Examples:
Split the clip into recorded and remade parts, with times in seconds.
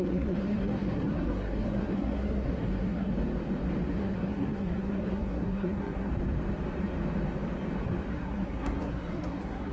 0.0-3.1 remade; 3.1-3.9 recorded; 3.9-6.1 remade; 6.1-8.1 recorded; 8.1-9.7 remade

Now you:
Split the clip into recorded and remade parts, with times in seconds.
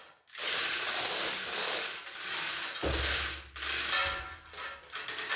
0.0-5.4 recorded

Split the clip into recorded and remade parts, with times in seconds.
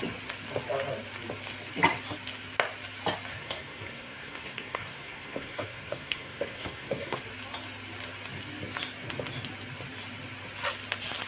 0.0-3.3 recorded; 3.3-7.2 remade; 7.2-11.3 recorded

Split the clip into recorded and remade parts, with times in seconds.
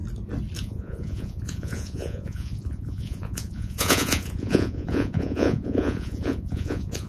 0.0-0.6 recorded; 0.6-7.1 remade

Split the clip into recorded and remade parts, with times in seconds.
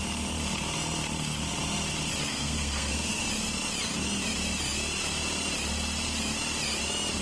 0.0-2.3 recorded; 2.3-3.2 remade; 3.2-7.2 recorded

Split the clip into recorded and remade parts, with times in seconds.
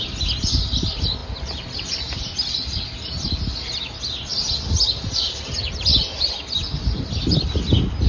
0.0-8.1 recorded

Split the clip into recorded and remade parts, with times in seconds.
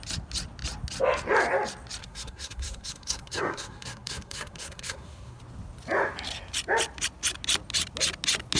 0.0-2.0 recorded; 2.0-5.4 remade; 5.4-8.6 recorded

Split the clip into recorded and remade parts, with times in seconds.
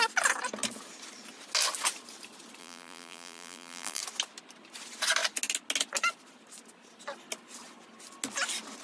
0.0-2.6 recorded; 2.6-4.0 remade; 4.0-8.8 recorded